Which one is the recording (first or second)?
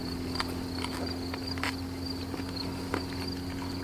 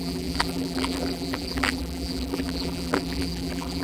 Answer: first